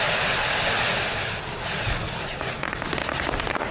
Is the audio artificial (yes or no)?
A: no